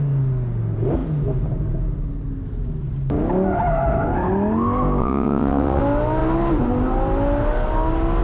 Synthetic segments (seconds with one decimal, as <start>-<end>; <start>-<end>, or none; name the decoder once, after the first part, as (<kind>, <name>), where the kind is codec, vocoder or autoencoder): 5.0-5.8 (vocoder, WaveNeXt)

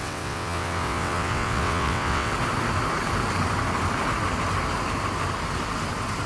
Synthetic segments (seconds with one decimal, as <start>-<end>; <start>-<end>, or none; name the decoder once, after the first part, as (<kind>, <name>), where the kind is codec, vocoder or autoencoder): 0.0-2.3 (vocoder, WaveNeXt)